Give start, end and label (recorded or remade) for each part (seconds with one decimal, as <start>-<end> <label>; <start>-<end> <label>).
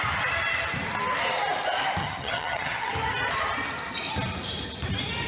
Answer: 0.0-2.0 recorded; 2.0-2.9 remade; 2.9-5.3 recorded